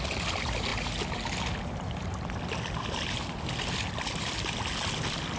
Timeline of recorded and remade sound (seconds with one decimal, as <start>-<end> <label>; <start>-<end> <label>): 0.0-5.4 recorded